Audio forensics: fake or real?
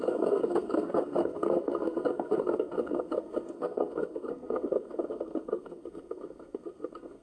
fake